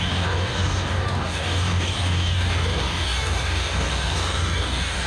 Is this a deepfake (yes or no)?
yes